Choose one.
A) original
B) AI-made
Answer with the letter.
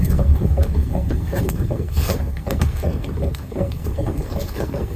B